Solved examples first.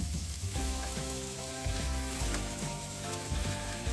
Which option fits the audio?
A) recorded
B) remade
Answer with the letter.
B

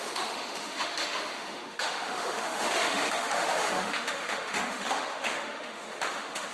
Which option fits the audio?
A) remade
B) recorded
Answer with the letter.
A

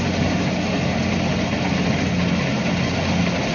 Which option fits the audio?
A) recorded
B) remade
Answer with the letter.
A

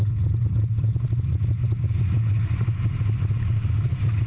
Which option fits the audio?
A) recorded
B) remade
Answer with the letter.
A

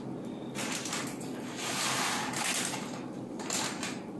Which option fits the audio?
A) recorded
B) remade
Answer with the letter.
A